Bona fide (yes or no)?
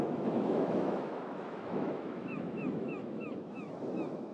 no